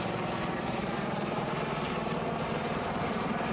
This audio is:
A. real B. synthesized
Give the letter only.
B